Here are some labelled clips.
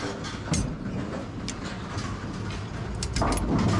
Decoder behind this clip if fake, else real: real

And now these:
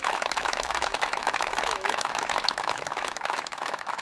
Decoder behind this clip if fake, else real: fake, autoencoder, DAC-VAE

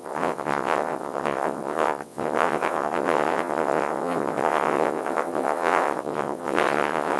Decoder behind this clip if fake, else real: fake, vocoder, WaveNeXt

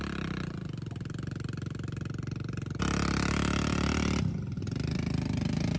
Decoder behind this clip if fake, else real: real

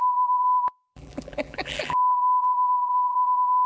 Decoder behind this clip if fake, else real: fake, vocoder, BigVGAN v2